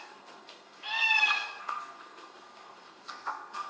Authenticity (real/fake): fake